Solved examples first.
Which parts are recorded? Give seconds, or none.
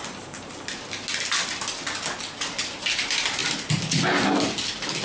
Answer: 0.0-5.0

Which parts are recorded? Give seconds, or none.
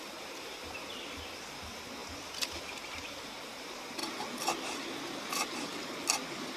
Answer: 0.0-6.6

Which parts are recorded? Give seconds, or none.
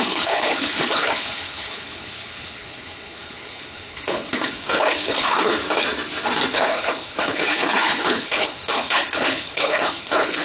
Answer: 5.6-6.5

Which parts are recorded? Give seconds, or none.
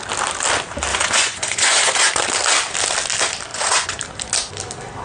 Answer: 0.0-0.9; 2.1-3.5; 4.0-5.0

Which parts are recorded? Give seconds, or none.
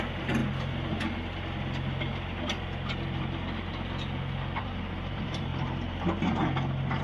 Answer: 0.4-4.6; 5.5-7.0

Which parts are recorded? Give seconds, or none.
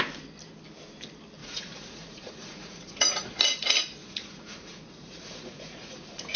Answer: 0.0-1.4; 3.4-4.0